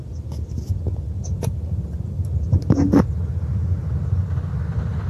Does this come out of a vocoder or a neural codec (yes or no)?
no